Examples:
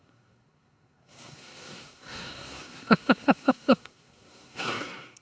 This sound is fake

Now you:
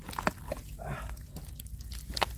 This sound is real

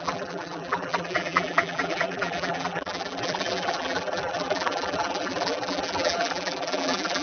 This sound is fake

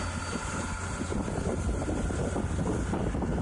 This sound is real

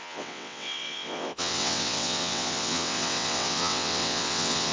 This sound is fake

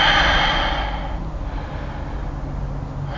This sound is real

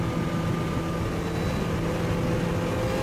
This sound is real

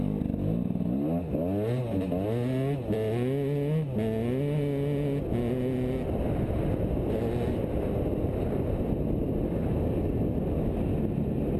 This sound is real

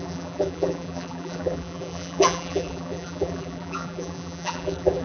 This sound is fake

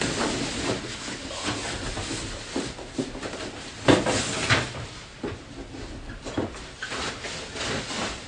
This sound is real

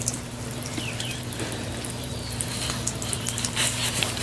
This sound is fake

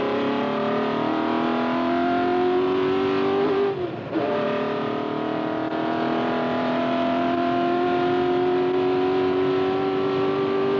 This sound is real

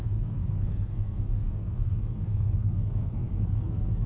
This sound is fake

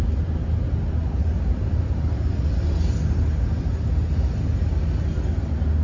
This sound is real